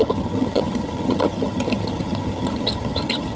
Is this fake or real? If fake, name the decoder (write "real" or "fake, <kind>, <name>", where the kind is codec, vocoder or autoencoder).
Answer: fake, vocoder, HiFi-GAN